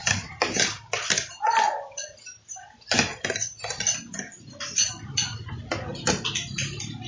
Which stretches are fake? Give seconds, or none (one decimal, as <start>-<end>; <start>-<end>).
none